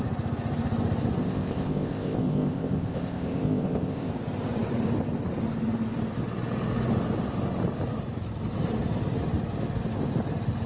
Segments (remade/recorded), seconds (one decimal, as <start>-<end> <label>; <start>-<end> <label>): 0.0-1.2 recorded; 1.2-4.1 remade; 4.1-10.7 recorded